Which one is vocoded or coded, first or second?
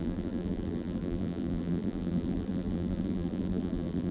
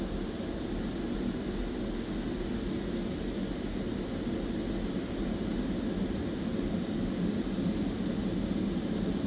first